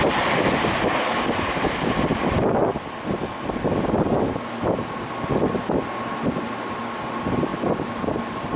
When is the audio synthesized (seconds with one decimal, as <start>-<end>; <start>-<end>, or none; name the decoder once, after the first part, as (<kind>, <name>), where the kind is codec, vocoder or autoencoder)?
none